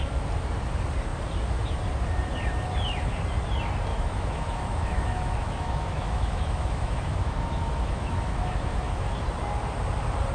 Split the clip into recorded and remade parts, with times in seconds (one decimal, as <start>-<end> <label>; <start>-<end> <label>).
0.0-3.9 recorded; 3.9-9.1 remade; 9.1-10.3 recorded